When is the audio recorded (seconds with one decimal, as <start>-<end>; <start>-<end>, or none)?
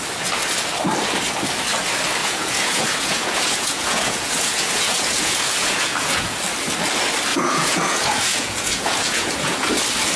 0.0-2.2; 6.4-7.3; 9.7-10.2